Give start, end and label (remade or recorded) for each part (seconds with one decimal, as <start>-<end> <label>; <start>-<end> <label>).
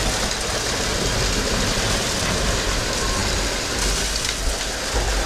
0.0-5.3 recorded